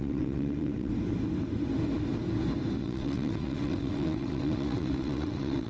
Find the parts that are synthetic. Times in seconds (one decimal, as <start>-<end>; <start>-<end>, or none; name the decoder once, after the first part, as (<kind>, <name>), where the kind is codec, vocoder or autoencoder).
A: 0.0-0.9 (vocoder, WaveNeXt); 2.8-5.7